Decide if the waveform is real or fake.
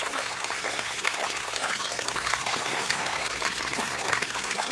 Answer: fake